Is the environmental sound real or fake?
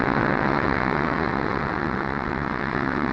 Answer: fake